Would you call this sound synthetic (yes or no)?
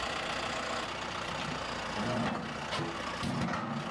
no